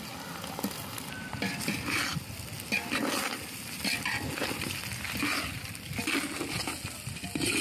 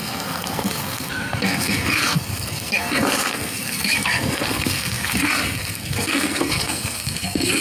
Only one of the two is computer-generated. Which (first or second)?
second